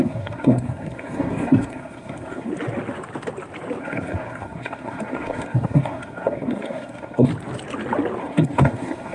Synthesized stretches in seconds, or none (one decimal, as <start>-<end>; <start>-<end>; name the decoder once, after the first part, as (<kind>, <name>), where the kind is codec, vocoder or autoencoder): 0.0-2.5 (codec, SNAC); 3.8-7.3; 8.2-9.1